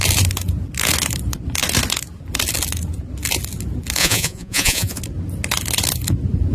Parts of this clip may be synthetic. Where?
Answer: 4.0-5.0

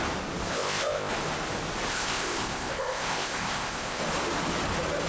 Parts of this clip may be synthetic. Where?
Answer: 0.5-1.1; 1.9-4.0

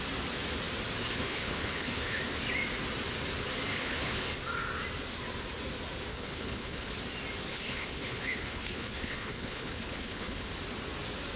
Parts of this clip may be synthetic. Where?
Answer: 1.1-2.2; 3.7-4.3; 6.1-6.9; 7.5-10.5

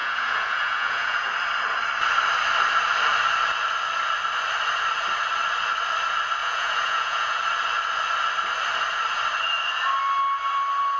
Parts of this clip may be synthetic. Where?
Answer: 0.0-1.3; 6.4-7.4

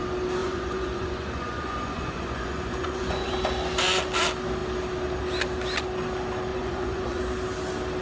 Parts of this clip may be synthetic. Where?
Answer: 0.4-3.3; 6.5-7.2

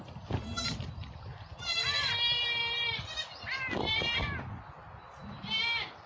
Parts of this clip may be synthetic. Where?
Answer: 1.5-4.8; 5.2-6.1

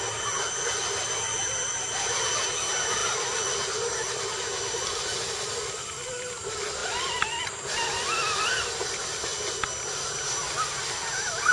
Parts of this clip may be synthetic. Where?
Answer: none